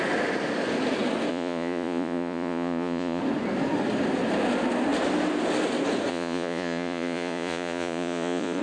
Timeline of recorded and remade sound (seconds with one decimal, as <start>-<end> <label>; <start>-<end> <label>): 0.0-1.3 recorded; 1.3-3.2 remade; 3.2-6.1 recorded; 6.1-8.6 remade